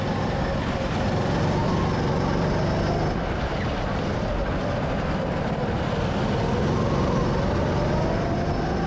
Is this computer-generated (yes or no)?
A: no